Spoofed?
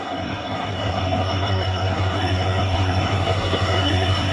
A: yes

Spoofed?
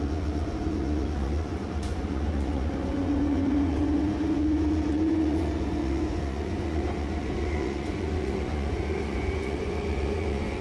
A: yes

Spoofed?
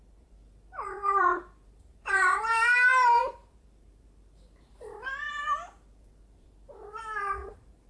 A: yes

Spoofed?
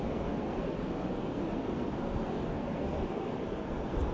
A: yes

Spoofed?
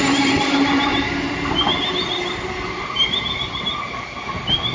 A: no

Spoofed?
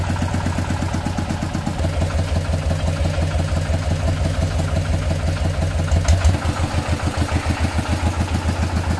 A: no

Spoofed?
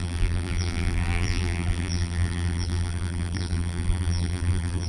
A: yes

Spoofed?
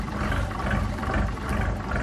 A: no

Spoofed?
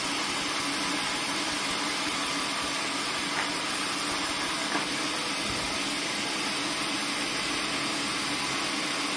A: no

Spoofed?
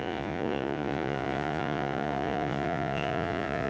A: yes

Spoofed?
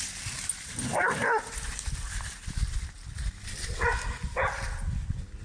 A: no